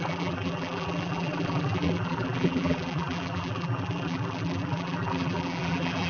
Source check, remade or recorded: remade